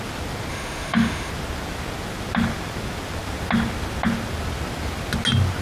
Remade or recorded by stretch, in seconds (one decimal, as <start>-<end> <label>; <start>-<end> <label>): 0.0-0.5 recorded; 0.5-1.3 remade; 1.3-5.6 recorded